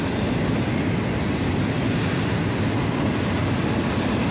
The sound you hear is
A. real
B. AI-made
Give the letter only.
A